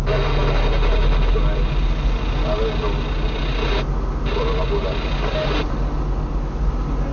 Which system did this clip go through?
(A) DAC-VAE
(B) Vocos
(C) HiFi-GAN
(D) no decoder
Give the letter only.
D